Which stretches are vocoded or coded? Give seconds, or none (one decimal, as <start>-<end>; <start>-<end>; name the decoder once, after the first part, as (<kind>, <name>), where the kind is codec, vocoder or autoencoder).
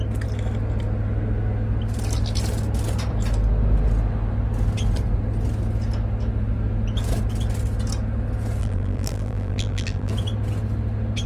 8.6-10.1 (vocoder, BigVGAN v2)